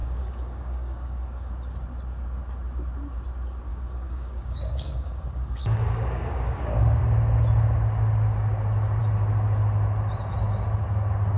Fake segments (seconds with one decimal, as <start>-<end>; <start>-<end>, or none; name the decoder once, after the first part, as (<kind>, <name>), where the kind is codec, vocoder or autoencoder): 0.0-1.5 (codec, DAC); 3.7-7.0